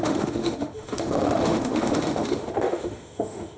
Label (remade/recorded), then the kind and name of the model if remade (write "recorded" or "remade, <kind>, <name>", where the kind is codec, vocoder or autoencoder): remade, autoencoder, DAC-VAE